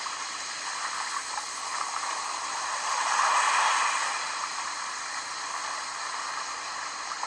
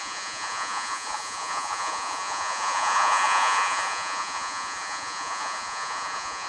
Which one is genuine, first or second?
first